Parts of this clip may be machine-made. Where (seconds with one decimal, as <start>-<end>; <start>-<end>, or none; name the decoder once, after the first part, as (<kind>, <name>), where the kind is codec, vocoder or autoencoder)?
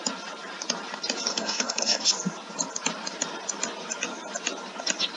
1.3-2.1 (codec, SNAC)